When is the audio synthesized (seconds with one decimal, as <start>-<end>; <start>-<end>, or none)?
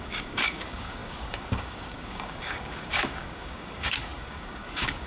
0.0-5.1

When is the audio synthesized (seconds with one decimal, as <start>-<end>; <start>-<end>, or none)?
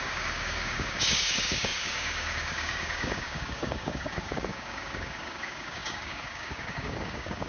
0.0-7.5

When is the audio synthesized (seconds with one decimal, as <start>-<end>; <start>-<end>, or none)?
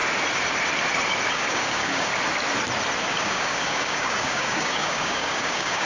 1.3-2.1; 3.0-5.9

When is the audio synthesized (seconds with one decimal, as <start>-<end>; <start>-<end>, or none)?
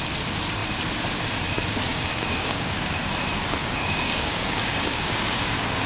1.9-3.0; 3.6-5.9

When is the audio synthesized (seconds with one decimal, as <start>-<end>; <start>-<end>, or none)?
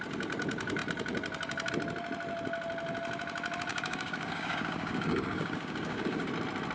3.7-6.3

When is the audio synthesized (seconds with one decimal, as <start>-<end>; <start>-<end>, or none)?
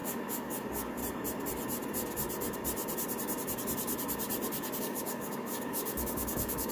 0.0-1.0; 4.8-6.7